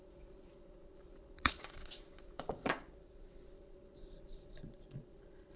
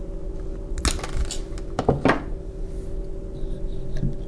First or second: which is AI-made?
first